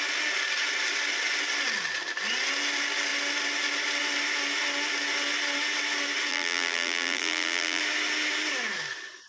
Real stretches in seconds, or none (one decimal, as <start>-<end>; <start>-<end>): 0.0-6.3; 7.8-9.3

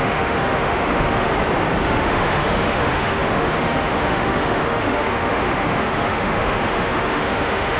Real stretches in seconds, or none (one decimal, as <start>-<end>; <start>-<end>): 1.3-1.8

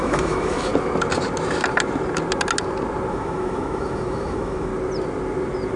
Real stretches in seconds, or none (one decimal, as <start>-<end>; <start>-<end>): 0.7-3.1; 4.7-5.8

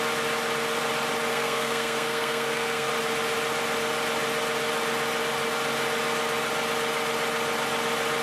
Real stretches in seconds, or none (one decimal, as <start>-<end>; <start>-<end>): 0.0-1.3; 2.9-8.2

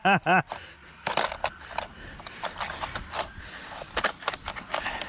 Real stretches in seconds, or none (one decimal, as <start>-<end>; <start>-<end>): 0.8-3.9

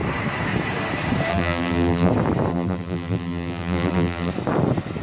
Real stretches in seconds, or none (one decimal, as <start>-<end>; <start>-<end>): 0.0-1.3; 2.1-2.5; 4.3-5.0

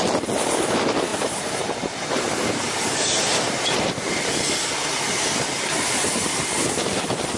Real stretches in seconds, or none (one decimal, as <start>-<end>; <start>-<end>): 0.0-1.1; 2.1-2.9; 4.3-7.4